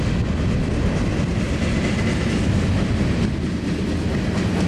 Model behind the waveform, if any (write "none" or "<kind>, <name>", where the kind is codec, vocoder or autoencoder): none